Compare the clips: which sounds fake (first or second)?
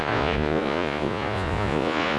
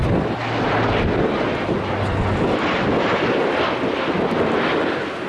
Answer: first